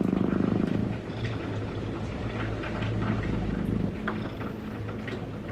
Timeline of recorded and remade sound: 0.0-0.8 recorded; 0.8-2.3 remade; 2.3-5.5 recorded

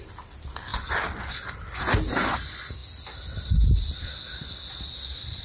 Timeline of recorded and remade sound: 0.0-5.4 recorded

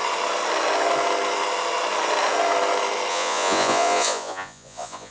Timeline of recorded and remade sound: 0.0-3.1 recorded; 3.1-5.1 remade

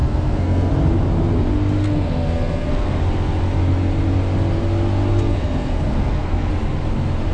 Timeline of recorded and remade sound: 0.0-0.7 remade; 0.7-1.8 recorded; 1.8-3.0 remade; 3.0-5.1 recorded; 5.1-6.5 remade; 6.5-7.3 recorded

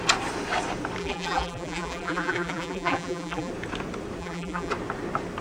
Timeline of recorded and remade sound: 0.0-1.0 recorded; 1.0-3.5 remade; 3.5-4.2 recorded; 4.2-4.7 remade; 4.7-5.4 recorded

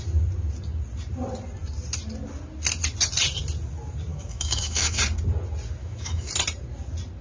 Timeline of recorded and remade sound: 0.0-4.1 recorded; 4.1-5.0 remade; 5.0-5.8 recorded; 5.8-6.3 remade; 6.3-7.2 recorded

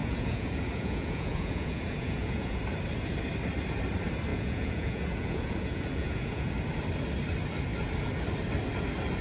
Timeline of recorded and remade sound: 0.0-2.6 remade; 2.6-4.3 recorded; 4.3-6.5 remade; 6.5-9.2 recorded

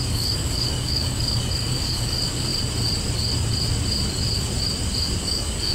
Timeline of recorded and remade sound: 0.0-2.5 remade; 2.5-5.2 recorded; 5.2-5.7 remade